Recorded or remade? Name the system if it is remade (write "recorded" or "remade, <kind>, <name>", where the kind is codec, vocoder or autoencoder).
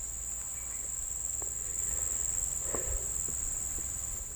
recorded